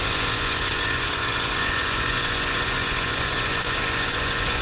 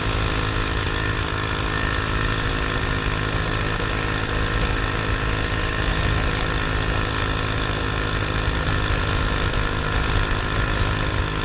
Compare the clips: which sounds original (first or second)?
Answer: second